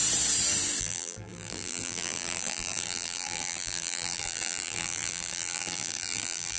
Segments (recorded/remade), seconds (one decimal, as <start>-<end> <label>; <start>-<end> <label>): 0.0-0.8 recorded; 0.8-6.6 remade